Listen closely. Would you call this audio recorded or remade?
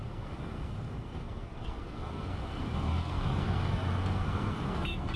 remade